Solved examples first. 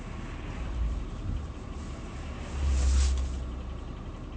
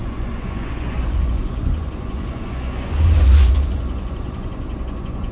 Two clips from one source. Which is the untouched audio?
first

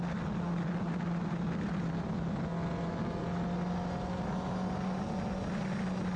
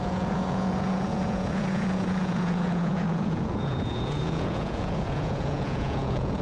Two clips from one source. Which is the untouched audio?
first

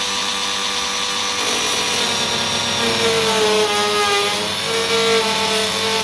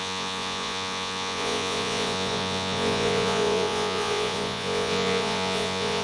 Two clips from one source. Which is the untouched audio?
first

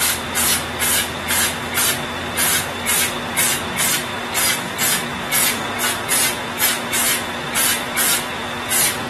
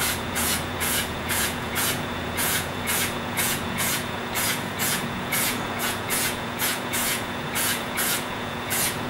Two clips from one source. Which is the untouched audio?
first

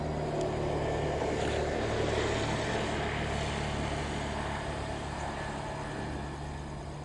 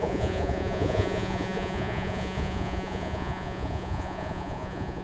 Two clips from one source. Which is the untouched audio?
first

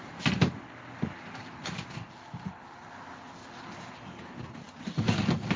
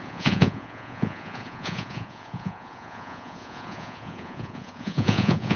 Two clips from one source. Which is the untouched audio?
first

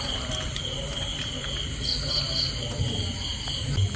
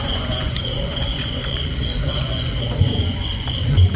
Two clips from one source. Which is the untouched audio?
first